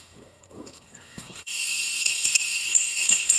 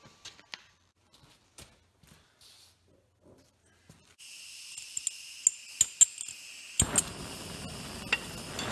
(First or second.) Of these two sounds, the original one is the second